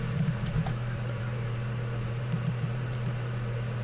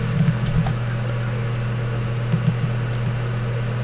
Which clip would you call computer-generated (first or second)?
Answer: first